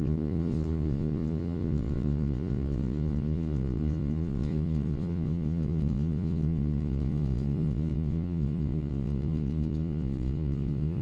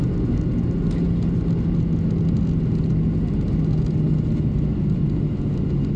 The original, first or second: second